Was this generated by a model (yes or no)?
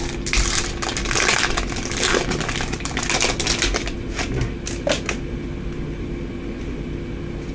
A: no